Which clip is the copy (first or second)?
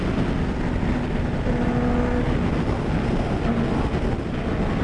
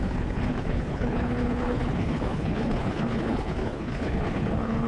second